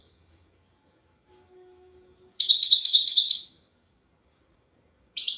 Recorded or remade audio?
remade